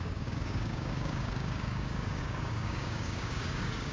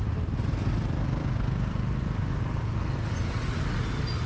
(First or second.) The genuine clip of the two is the second